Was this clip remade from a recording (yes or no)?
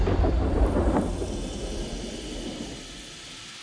no